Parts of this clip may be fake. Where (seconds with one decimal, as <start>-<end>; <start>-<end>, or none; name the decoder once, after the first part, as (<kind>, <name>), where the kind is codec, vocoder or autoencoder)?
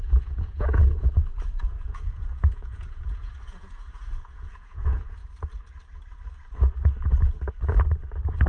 0.0-5.2 (vocoder, Vocos)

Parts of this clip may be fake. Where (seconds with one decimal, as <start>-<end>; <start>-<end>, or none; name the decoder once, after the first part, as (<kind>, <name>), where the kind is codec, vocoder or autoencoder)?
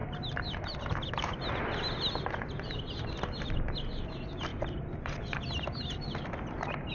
none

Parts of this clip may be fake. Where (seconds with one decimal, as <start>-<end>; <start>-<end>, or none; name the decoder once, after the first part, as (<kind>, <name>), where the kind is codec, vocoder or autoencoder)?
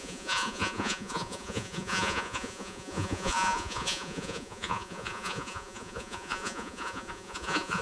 0.0-7.8 (vocoder, Vocos)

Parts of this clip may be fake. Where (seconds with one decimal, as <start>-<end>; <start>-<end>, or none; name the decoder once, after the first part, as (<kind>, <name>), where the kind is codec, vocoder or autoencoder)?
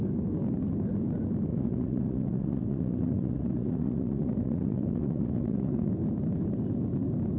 1.5-5.9 (vocoder, Vocos)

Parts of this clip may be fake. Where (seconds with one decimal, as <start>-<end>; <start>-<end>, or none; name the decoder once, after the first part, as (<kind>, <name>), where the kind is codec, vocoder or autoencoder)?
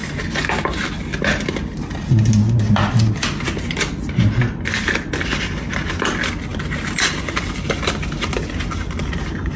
none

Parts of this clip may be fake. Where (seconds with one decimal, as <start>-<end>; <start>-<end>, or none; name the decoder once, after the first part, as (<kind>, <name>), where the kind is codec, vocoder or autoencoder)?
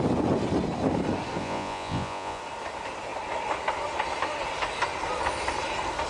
1.4-2.4 (vocoder, Vocos)